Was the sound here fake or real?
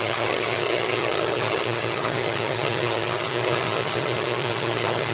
fake